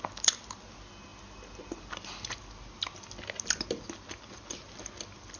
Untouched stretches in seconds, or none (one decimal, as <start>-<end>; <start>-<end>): 0.0-5.4